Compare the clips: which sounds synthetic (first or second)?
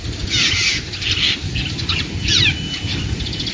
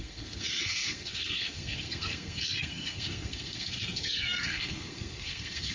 second